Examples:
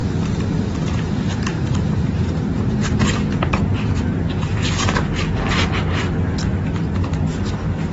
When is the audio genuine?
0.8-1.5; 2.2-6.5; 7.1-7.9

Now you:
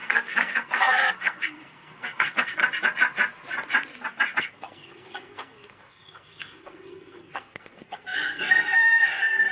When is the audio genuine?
2.6-4.4

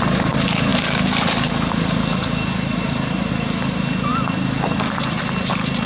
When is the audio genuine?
0.0-5.9

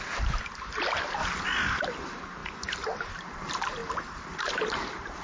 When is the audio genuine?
1.2-1.8; 2.4-3.1; 3.8-4.4

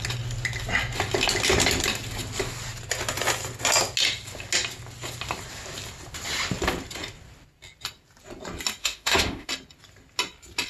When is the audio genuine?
0.0-8.8; 9.5-10.7

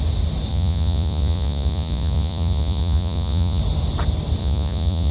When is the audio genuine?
0.0-0.5; 3.6-4.4